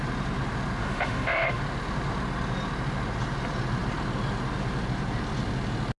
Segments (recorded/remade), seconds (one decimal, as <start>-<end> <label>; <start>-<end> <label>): 0.0-0.8 recorded; 0.8-1.6 remade; 1.6-6.0 recorded